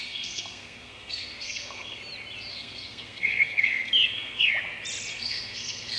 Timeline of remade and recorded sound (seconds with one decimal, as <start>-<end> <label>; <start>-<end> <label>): 0.0-2.0 remade; 2.0-2.5 recorded; 2.5-4.5 remade; 4.5-5.1 recorded; 5.1-6.0 remade